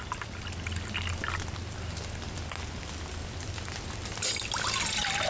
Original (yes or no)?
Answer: yes